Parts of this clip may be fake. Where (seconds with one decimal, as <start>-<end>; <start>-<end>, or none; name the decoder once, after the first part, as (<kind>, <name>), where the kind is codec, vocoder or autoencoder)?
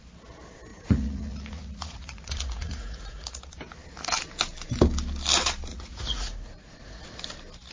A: 0.7-3.4 (vocoder, Vocos); 5.7-7.0